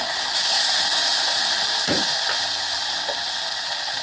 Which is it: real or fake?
real